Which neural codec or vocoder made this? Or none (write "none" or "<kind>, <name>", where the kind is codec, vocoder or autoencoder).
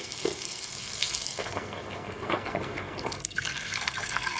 codec, SNAC